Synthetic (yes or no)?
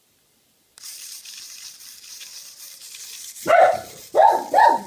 yes